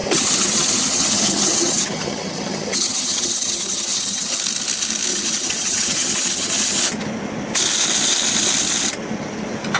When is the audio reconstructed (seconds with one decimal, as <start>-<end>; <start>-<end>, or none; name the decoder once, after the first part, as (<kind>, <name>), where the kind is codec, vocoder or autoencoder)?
0.0-4.4 (vocoder, HiFi-GAN); 5.1-6.8